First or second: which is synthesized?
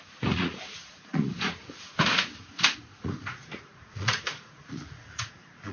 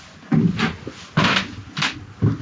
first